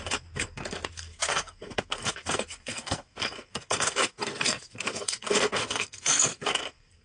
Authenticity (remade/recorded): remade